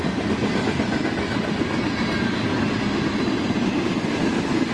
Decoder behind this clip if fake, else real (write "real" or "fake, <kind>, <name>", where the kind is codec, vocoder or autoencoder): real